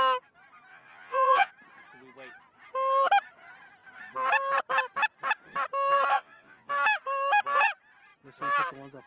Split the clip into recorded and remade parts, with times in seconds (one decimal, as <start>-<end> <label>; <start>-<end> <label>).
0.0-0.7 recorded; 0.7-1.5 remade; 1.5-6.1 recorded; 6.1-6.7 remade; 6.7-9.1 recorded